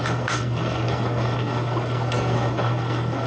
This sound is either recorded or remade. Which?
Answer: remade